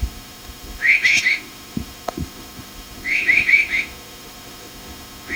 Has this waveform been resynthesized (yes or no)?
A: yes